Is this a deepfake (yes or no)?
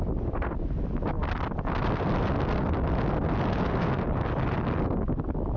no